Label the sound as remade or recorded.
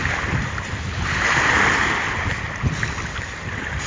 recorded